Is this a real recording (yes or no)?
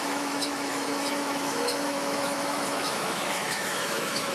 no